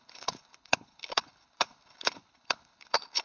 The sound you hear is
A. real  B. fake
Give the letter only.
B